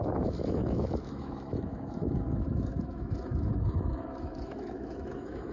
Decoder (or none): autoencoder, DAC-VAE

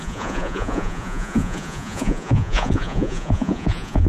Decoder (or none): vocoder, Vocos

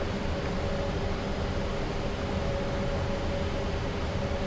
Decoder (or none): none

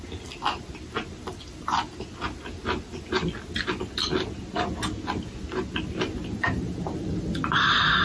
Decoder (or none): none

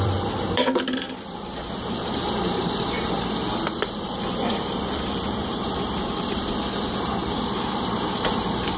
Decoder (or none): vocoder, BigVGAN v2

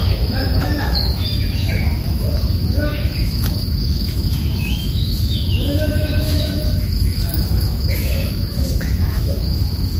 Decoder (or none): autoencoder, DAC-VAE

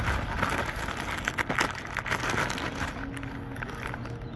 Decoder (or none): none